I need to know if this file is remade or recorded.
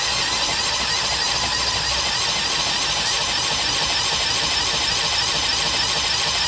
recorded